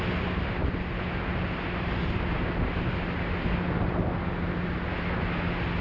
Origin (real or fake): real